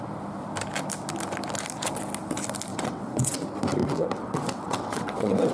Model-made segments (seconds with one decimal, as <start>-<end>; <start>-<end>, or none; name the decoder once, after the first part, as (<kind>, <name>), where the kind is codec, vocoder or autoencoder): 2.7-3.4 (vocoder, WaveNeXt); 3.8-5.5